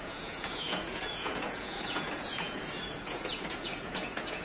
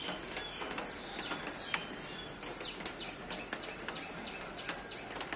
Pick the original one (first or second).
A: second